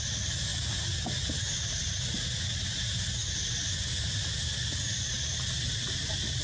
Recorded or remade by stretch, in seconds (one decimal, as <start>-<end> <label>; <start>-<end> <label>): 0.0-6.4 recorded